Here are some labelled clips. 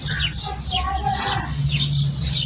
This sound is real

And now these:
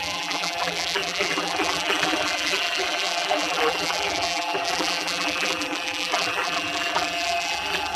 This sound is fake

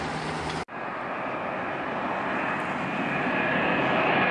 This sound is real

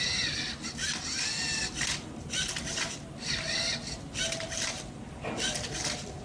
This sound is real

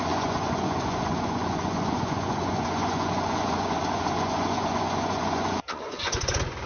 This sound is fake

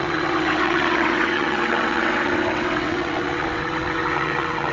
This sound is fake